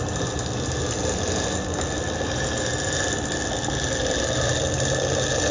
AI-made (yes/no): no